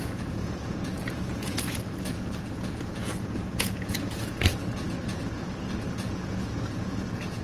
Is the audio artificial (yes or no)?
yes